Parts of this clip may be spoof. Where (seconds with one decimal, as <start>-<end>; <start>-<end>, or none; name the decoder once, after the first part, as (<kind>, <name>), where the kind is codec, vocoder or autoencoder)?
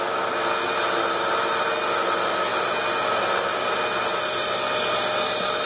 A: none